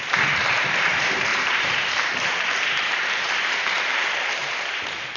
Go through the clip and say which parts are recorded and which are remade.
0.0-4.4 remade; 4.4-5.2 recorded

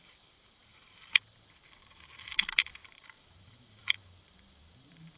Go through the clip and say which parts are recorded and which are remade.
0.0-5.2 remade